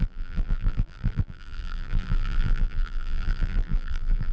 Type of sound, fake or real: fake